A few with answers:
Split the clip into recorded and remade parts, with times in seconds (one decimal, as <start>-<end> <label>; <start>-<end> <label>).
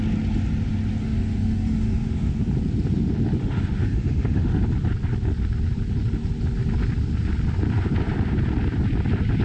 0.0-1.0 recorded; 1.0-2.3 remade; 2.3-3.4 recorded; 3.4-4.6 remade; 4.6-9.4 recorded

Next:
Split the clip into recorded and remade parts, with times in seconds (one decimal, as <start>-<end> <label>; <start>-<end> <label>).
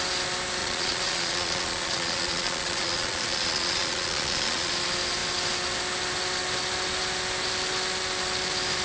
0.0-0.6 recorded; 0.6-4.7 remade; 4.7-8.8 recorded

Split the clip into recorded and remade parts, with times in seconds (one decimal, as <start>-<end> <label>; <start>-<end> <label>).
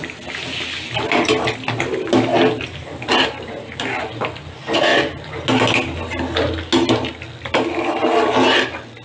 0.0-9.0 recorded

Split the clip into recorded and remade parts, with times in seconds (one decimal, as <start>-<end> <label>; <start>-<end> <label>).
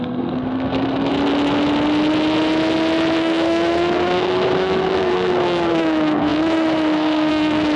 0.0-1.1 remade; 1.1-3.2 recorded; 3.2-7.8 remade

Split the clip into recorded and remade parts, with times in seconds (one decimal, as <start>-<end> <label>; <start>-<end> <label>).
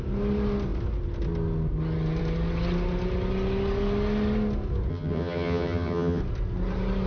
0.0-4.9 recorded; 4.9-6.2 remade; 6.2-7.1 recorded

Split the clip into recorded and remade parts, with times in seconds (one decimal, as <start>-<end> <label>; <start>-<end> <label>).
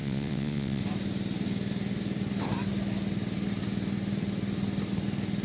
0.0-0.8 remade; 0.8-5.4 recorded